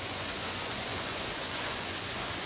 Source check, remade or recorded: remade